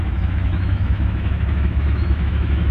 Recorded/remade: remade